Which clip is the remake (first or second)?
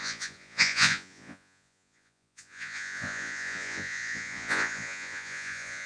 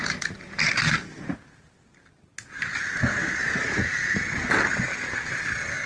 first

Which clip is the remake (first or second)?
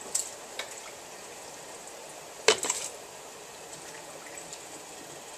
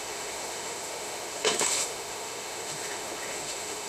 second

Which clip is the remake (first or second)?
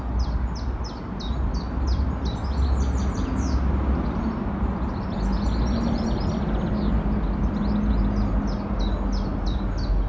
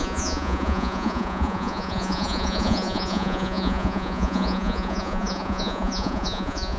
second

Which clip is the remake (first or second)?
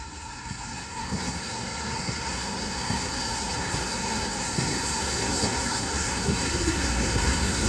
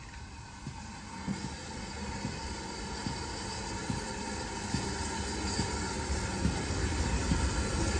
first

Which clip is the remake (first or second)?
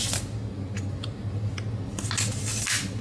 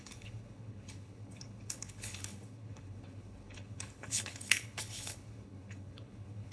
second